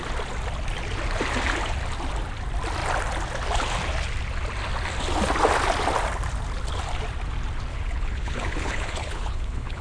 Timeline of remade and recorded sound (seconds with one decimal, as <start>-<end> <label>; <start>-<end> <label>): 0.0-7.7 recorded; 7.7-9.8 remade